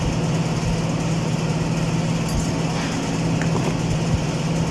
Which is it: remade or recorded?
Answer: recorded